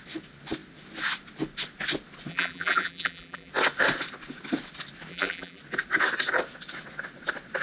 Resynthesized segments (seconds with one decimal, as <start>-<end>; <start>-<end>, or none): 2.3-3.5; 5.1-5.6